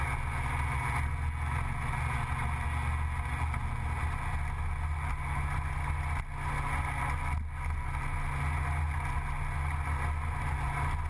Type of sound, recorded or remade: recorded